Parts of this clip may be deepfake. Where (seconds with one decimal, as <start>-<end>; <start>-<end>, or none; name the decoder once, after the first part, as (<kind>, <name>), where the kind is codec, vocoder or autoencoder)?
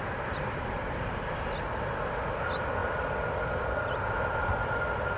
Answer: none